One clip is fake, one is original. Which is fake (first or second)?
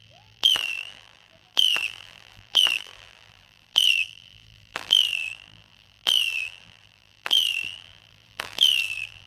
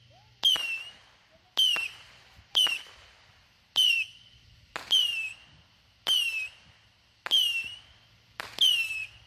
first